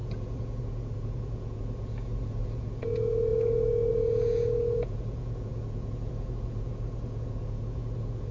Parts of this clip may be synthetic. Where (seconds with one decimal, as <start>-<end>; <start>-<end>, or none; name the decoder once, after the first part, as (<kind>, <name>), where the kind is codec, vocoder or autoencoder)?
0.0-8.3 (vocoder, Vocos)